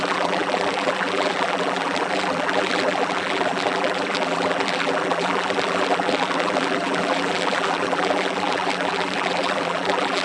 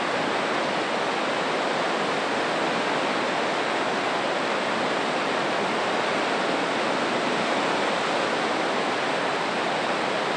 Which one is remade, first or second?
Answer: first